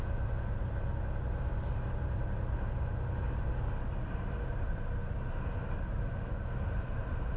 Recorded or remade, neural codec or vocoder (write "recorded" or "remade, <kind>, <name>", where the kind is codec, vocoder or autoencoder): recorded